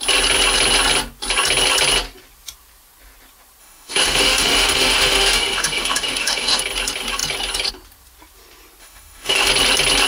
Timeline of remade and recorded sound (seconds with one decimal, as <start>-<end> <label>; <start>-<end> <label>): 0.0-3.6 recorded; 3.6-6.6 remade; 6.6-8.8 recorded; 8.8-9.5 remade; 9.5-10.1 recorded